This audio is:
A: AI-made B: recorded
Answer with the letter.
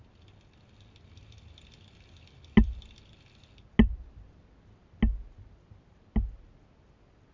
B